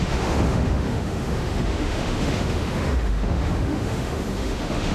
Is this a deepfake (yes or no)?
yes